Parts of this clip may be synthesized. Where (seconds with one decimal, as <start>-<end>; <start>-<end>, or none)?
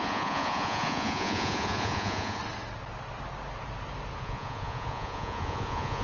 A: 0.0-2.4; 4.2-6.0